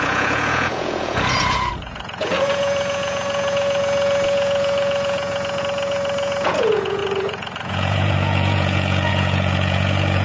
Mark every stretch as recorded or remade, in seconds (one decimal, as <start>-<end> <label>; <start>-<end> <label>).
0.0-10.2 remade